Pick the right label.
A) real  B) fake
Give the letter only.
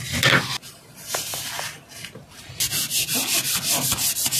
A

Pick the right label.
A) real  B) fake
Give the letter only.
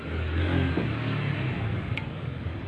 B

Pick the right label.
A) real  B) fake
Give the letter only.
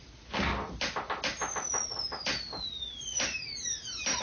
A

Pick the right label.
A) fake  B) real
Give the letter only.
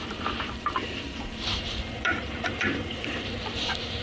A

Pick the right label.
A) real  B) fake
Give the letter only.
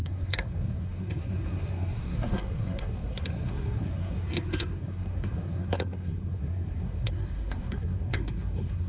B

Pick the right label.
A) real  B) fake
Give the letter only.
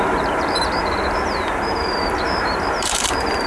B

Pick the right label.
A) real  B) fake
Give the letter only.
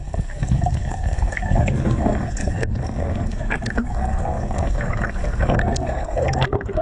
B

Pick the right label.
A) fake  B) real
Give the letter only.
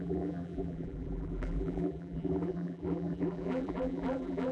A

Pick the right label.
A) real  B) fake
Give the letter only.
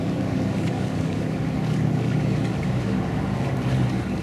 B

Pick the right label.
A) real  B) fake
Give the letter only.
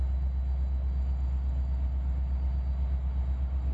A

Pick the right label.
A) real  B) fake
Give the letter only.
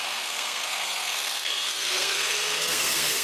B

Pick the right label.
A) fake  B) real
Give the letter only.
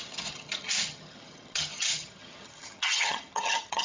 A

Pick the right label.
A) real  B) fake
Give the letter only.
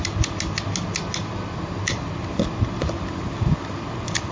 A